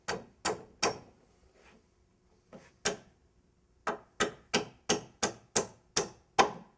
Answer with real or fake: real